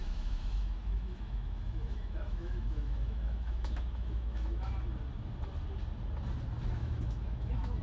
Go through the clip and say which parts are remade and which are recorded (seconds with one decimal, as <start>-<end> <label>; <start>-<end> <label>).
0.0-4.7 remade; 4.7-6.8 recorded; 6.8-7.8 remade

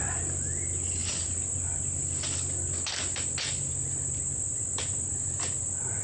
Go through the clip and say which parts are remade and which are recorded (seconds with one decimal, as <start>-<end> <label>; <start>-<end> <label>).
0.0-6.0 recorded

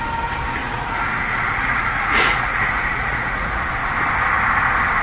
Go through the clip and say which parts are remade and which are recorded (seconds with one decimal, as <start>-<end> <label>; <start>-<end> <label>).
0.0-0.6 recorded; 0.6-3.6 remade; 3.6-5.0 recorded

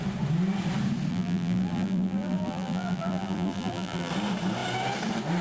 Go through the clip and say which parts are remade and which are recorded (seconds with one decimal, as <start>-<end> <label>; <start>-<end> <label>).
0.0-1.1 recorded; 1.1-4.1 remade; 4.1-5.4 recorded